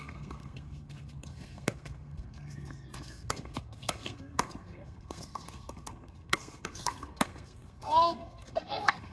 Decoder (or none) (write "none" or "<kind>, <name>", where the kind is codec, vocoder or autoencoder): codec, SNAC